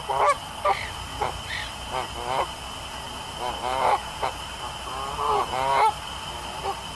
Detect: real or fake real